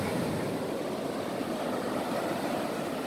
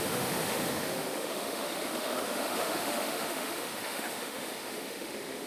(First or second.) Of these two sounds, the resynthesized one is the second